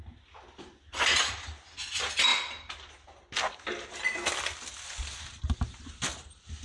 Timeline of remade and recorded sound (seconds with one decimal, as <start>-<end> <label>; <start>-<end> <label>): 0.0-6.6 recorded